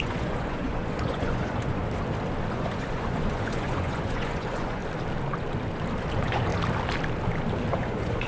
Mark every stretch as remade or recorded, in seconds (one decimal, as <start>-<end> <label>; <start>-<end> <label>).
0.0-1.8 remade; 1.8-2.5 recorded; 2.5-4.8 remade; 4.8-6.1 recorded; 6.1-6.5 remade; 6.5-7.8 recorded; 7.8-8.3 remade